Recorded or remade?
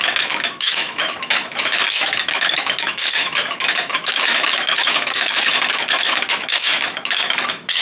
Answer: remade